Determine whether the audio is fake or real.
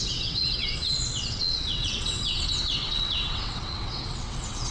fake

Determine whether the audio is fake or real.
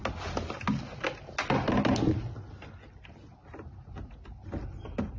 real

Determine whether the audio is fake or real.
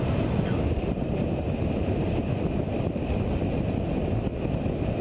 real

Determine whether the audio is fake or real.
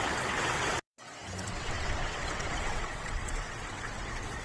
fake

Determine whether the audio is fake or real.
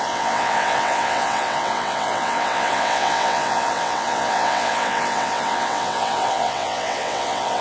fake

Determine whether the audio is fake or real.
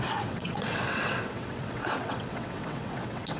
fake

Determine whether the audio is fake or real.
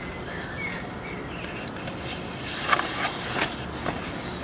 real